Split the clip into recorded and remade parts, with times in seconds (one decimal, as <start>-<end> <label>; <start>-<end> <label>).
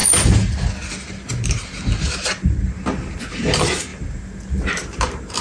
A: 0.0-3.2 recorded; 3.2-3.9 remade; 3.9-4.7 recorded; 4.7-5.4 remade